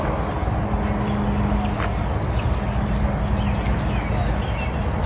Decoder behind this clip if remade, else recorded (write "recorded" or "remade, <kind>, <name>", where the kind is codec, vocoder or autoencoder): recorded